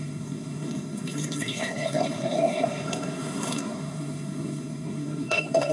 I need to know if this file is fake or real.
fake